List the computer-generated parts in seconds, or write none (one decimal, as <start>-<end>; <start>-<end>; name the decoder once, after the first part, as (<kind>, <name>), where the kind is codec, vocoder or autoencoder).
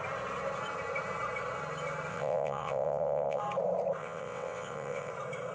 2.1-3.4 (vocoder, WaveNeXt); 4.0-5.1